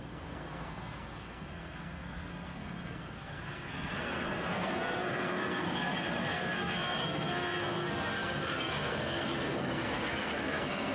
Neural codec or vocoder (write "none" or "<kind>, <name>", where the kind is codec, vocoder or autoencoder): codec, SNAC